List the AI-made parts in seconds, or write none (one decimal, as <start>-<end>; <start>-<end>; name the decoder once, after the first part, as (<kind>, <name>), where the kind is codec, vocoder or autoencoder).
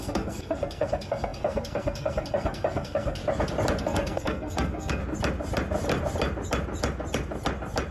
0.0-3.2 (codec, SNAC); 3.8-5.0